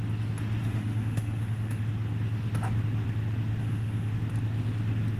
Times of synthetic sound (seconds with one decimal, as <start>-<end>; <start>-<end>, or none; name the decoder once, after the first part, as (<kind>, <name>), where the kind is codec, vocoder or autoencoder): 0.6-1.8 (autoencoder, DAC-VAE); 3.6-4.1